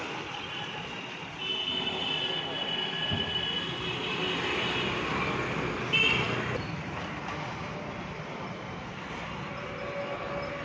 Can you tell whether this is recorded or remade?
recorded